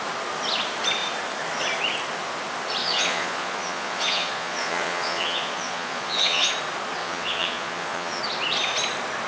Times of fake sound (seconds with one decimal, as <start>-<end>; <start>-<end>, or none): 2.8-6.5; 7.0-8.2